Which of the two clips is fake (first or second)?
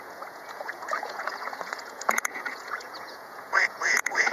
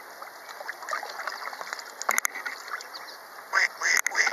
first